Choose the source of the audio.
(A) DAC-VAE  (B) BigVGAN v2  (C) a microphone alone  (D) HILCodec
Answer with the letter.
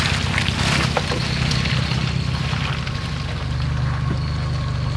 C